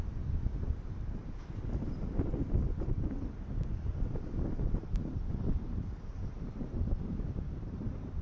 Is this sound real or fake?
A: real